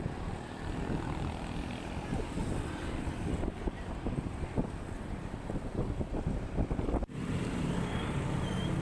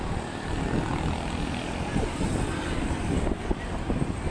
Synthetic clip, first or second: first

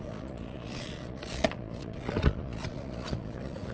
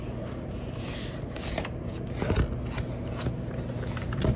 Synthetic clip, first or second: first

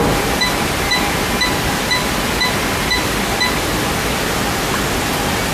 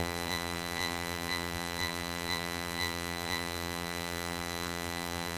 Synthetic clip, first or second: second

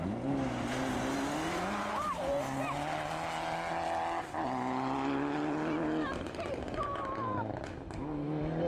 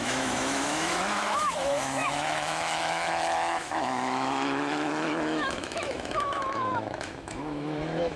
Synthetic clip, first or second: second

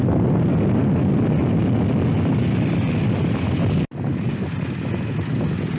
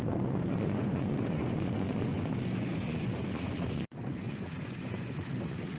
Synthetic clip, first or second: second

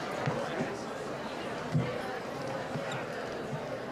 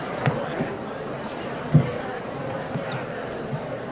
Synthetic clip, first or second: second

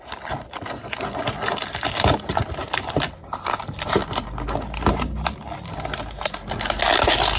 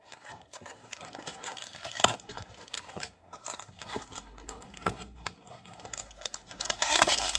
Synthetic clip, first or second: second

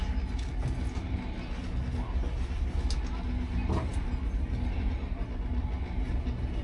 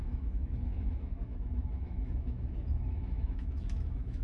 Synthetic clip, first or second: second